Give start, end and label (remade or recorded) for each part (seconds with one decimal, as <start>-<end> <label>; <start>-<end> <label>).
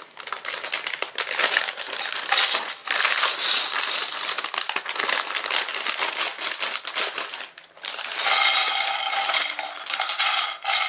0.0-10.9 recorded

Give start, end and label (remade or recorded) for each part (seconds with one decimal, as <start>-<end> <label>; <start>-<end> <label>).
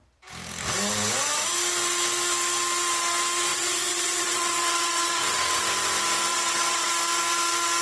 0.0-3.5 recorded; 3.5-5.6 remade; 5.6-6.3 recorded; 6.3-6.9 remade; 6.9-7.8 recorded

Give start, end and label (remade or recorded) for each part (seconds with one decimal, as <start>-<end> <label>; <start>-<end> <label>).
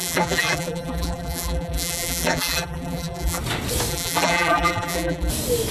0.0-3.4 remade; 3.4-3.9 recorded; 3.9-5.3 remade; 5.3-5.7 recorded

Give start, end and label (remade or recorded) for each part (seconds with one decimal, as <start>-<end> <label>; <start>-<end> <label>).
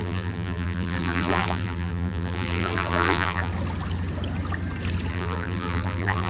0.0-3.5 remade; 3.5-5.1 recorded; 5.1-6.3 remade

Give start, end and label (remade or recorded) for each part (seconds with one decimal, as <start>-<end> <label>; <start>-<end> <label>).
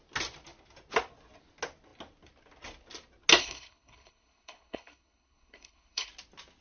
0.0-3.4 recorded; 3.4-6.1 remade; 6.1-6.6 recorded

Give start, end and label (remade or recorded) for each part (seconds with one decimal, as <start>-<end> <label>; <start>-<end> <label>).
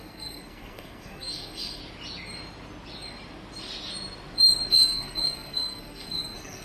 0.0-1.8 remade; 1.8-4.7 recorded; 4.7-6.6 remade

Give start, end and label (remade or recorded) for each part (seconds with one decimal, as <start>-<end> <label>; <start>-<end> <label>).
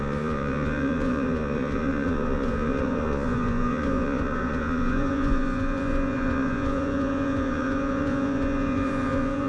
0.0-9.5 remade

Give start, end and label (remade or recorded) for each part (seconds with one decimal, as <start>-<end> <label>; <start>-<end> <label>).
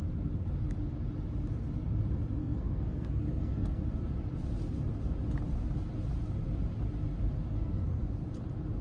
0.0-2.4 recorded; 2.4-3.8 remade; 3.8-7.5 recorded; 7.5-8.0 remade; 8.0-8.8 recorded